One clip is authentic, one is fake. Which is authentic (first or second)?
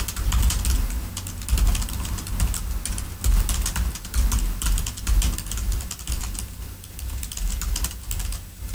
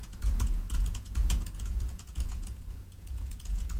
first